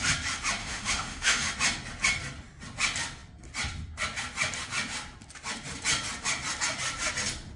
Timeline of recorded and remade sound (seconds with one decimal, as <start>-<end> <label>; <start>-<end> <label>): 0.0-0.6 recorded; 0.6-1.5 remade; 1.5-7.6 recorded

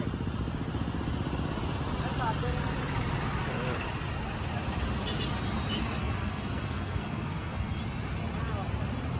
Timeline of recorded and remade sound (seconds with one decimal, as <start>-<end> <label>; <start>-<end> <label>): 0.0-6.0 recorded; 6.0-7.8 remade; 7.8-9.2 recorded

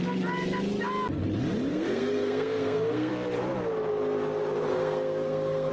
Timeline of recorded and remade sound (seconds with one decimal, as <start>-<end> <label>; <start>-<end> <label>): 0.0-1.7 recorded; 1.7-3.1 remade; 3.1-4.7 recorded; 4.7-5.7 remade